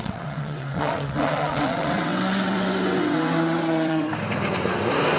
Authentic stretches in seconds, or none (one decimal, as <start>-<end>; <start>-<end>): 4.1-5.2